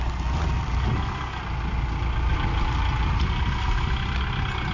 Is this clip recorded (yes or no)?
yes